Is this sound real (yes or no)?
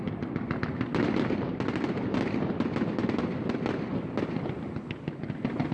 yes